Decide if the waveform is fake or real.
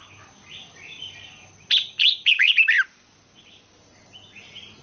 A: real